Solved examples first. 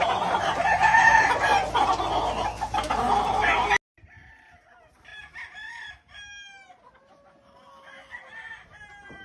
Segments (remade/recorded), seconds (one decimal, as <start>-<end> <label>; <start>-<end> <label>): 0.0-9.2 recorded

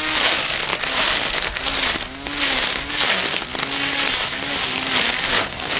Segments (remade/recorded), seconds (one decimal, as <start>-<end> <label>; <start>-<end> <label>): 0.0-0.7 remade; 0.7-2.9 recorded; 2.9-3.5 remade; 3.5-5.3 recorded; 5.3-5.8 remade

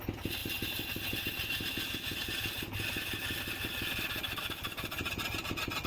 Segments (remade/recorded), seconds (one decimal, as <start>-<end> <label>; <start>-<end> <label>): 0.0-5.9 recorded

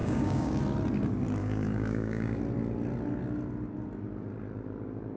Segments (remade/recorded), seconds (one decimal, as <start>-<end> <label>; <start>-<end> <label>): 0.0-0.6 remade; 0.6-1.4 recorded; 1.4-2.4 remade; 2.4-5.2 recorded

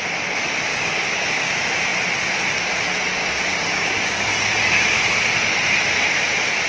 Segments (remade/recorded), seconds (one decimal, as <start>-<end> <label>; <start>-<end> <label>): 0.0-0.7 recorded; 0.7-1.5 remade; 1.5-3.2 recorded; 3.2-4.3 remade; 4.3-6.7 recorded

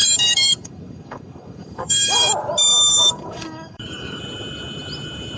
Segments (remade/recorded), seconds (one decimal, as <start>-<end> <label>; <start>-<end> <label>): 0.0-2.3 remade; 2.3-2.9 recorded; 2.9-4.2 remade; 4.2-5.4 recorded